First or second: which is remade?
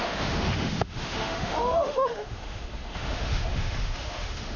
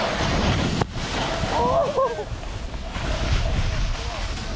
first